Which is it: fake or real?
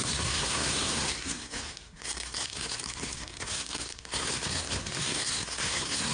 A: fake